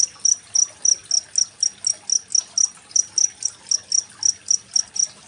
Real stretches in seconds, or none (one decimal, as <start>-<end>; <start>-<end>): 1.0-2.4